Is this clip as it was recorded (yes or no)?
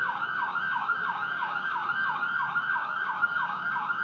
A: no